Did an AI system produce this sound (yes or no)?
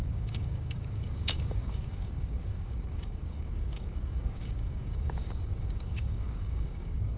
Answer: yes